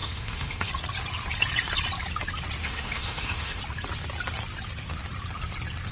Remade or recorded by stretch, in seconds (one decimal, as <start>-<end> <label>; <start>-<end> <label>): 0.0-0.7 remade; 0.7-2.6 recorded; 2.6-3.6 remade; 3.6-5.9 recorded

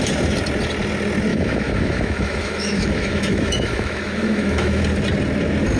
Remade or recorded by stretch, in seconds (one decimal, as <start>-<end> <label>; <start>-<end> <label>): 0.0-1.3 recorded; 1.3-4.8 remade; 4.8-5.8 recorded

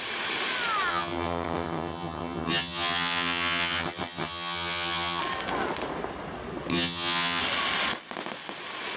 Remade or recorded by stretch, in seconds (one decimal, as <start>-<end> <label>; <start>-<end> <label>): 0.0-0.9 recorded; 0.9-5.2 remade; 5.2-6.7 recorded; 6.7-7.4 remade; 7.4-9.0 recorded

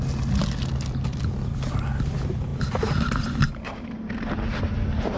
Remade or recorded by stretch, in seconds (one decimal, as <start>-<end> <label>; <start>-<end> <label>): 0.0-5.2 remade

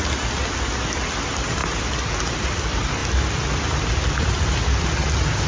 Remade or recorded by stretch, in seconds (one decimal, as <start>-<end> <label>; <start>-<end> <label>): 0.0-5.5 recorded

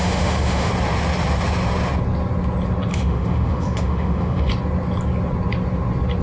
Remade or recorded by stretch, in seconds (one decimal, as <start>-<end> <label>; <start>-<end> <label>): 0.0-0.7 remade; 0.7-2.9 recorded; 2.9-4.5 remade; 4.5-6.2 recorded